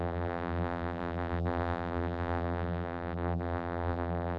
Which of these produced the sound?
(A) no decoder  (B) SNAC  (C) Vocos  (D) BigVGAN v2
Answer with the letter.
D